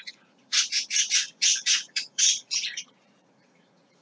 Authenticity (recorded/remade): remade